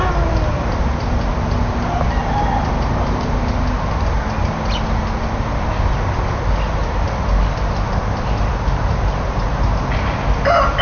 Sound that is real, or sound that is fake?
real